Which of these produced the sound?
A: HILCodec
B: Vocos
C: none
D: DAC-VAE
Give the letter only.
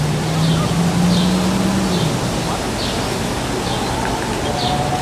C